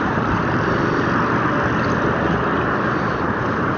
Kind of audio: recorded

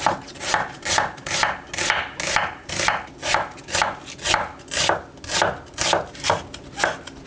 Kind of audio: recorded